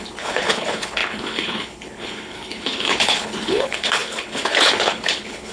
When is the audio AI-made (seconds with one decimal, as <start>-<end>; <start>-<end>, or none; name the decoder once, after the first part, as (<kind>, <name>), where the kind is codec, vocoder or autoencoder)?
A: 0.0-5.5 (codec, HILCodec)